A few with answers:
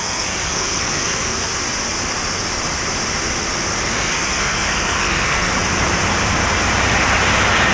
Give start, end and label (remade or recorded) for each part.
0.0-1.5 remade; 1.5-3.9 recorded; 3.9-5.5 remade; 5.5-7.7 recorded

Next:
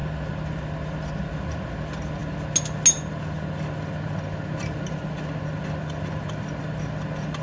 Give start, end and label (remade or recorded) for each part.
0.0-7.4 recorded

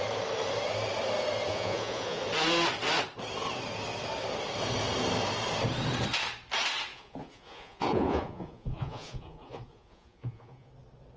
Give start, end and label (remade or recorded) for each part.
0.0-1.5 recorded; 1.5-2.2 remade; 2.2-6.9 recorded; 6.9-10.7 remade; 10.7-11.2 recorded

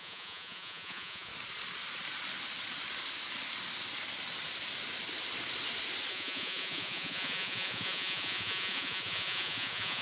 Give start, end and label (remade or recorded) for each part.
0.0-1.3 remade; 1.3-6.1 recorded; 6.1-10.0 remade

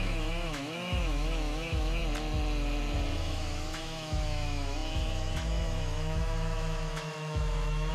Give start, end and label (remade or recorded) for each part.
0.0-2.0 remade; 2.0-3.2 recorded; 3.2-7.9 remade

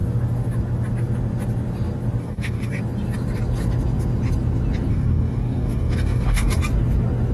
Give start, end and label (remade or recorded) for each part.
0.0-2.2 recorded; 2.2-2.8 remade; 2.8-4.9 recorded; 4.9-6.6 remade; 6.6-7.3 recorded